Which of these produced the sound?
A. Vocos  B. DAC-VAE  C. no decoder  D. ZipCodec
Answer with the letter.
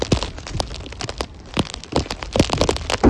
C